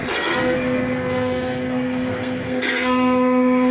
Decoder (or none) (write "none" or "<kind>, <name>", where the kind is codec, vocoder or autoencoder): codec, SNAC